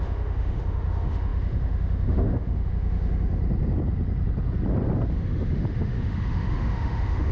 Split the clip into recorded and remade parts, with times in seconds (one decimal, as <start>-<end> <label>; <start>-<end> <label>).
0.0-3.4 remade; 3.4-5.1 recorded; 5.1-7.3 remade